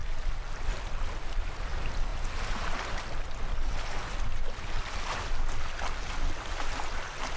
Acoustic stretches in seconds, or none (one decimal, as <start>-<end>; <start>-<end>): 0.0-7.4